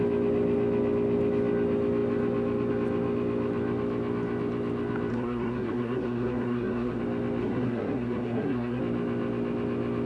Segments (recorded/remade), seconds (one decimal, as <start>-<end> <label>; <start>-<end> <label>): 0.0-5.1 recorded; 5.1-7.0 remade; 7.0-7.4 recorded; 7.4-8.8 remade; 8.8-10.1 recorded